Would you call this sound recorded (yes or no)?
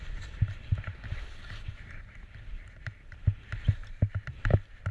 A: no